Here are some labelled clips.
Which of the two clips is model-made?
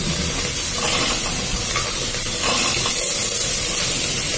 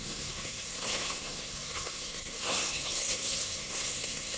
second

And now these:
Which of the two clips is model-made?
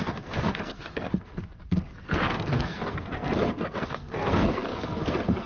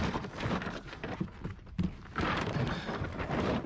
first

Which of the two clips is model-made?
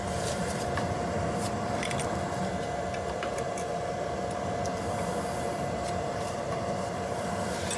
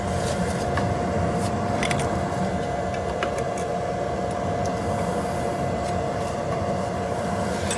first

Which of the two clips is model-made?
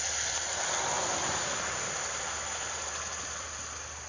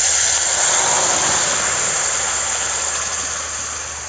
first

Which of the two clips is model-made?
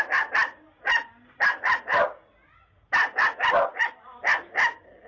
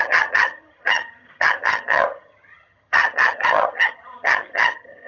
second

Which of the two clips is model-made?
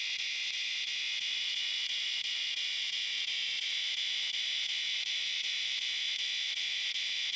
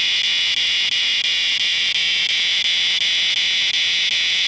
first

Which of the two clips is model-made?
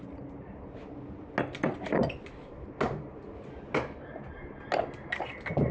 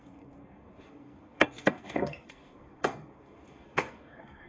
second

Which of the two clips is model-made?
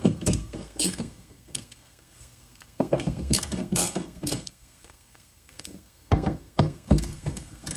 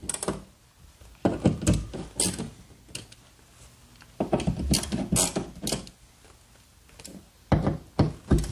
first